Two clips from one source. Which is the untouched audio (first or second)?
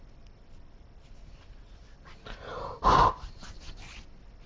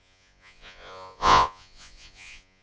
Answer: first